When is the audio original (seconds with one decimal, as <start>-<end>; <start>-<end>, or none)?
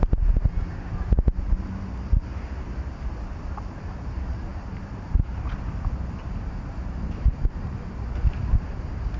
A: 0.0-4.5; 5.5-9.2